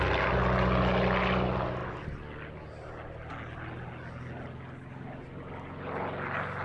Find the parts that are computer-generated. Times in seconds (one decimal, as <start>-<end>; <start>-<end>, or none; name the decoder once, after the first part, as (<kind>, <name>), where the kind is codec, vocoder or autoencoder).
none